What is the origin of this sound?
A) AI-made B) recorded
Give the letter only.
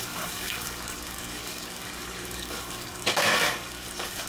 A